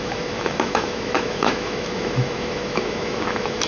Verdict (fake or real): fake